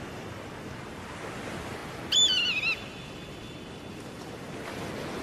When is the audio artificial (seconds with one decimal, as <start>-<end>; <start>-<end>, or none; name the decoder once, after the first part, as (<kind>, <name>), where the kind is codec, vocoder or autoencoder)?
none